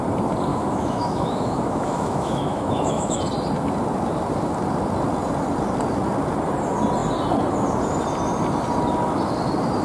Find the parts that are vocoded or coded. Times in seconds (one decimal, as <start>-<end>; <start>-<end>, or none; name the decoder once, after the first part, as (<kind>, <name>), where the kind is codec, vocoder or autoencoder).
0.5-3.2 (autoencoder, DAC-VAE)